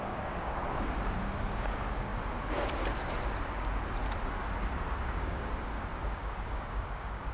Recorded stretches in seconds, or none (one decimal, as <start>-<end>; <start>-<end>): 0.6-1.2; 2.1-4.9